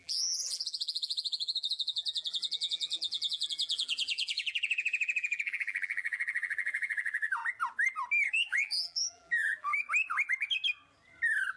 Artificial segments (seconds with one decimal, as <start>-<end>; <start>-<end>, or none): 0.0-7.4; 8.3-9.7